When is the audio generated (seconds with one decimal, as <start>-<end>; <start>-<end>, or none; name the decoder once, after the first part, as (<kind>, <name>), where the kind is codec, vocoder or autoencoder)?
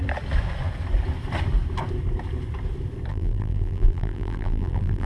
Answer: 3.1-5.1 (vocoder, BigVGAN v2)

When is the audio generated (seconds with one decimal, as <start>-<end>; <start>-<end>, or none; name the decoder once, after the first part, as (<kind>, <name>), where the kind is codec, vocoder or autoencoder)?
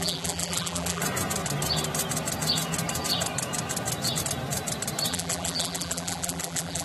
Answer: 0.0-1.0 (vocoder, BigVGAN v2); 5.1-6.8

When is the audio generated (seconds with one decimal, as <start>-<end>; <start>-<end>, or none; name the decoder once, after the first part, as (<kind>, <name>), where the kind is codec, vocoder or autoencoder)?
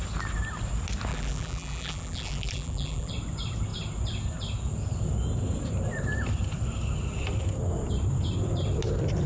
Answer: 1.1-3.1 (vocoder, BigVGAN v2)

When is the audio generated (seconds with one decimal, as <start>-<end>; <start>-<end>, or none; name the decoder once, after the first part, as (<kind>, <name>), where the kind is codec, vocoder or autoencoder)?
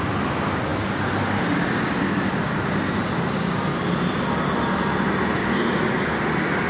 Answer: 5.4-6.2 (codec, DAC)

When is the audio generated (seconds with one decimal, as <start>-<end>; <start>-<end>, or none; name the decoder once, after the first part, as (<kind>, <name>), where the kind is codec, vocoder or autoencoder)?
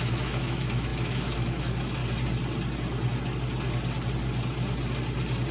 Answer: 0.0-2.0 (autoencoder, DAC-VAE)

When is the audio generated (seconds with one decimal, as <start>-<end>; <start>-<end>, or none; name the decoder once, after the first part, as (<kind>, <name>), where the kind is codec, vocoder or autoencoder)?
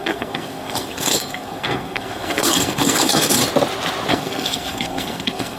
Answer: 0.0-3.4 (codec, SNAC); 4.1-5.6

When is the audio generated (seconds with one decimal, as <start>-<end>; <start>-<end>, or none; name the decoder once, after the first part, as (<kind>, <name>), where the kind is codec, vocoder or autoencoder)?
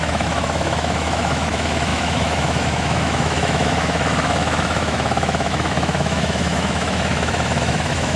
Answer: 0.0-8.2 (autoencoder, DAC-VAE)